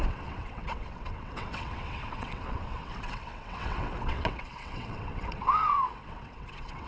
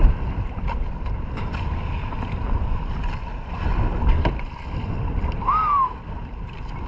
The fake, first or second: first